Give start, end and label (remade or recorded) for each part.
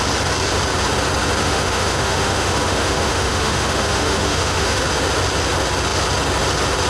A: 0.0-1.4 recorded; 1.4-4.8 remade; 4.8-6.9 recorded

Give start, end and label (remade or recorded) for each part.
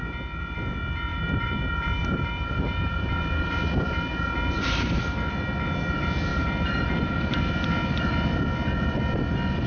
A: 0.0-1.1 recorded; 1.1-5.0 remade; 5.0-6.3 recorded; 6.3-7.4 remade; 7.4-9.7 recorded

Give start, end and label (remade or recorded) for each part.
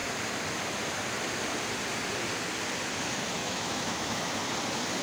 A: 0.0-3.4 recorded; 3.4-4.4 remade; 4.4-5.0 recorded